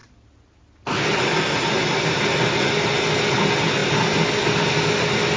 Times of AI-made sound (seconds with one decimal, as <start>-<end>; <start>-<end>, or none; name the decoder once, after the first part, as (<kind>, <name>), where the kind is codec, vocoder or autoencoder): none